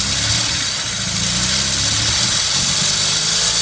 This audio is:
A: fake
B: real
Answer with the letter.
B